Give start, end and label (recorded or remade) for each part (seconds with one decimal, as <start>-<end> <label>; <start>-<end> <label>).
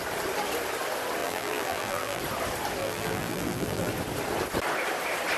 0.0-1.2 recorded; 1.2-2.2 remade; 2.2-2.8 recorded; 2.8-3.9 remade; 3.9-5.4 recorded